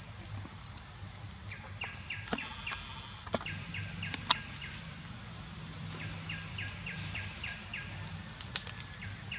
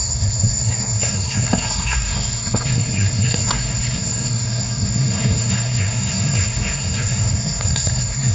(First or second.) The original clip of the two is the first